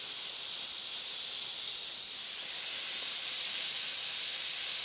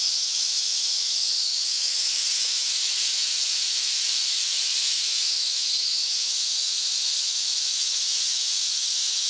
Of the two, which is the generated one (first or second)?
second